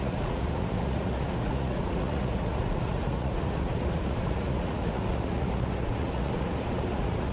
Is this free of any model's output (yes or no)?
no